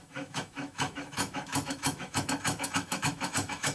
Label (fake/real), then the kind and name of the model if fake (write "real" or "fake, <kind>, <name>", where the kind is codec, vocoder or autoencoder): fake, autoencoder, DAC-VAE